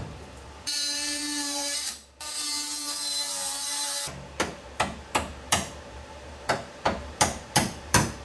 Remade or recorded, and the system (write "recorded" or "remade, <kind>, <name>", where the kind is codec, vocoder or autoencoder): remade, vocoder, BigVGAN v2